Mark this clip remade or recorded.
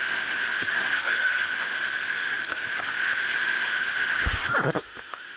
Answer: remade